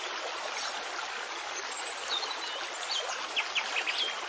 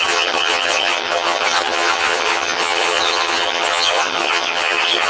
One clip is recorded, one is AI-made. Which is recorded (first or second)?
first